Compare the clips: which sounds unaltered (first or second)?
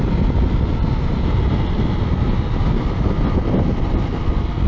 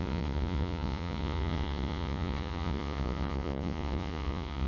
first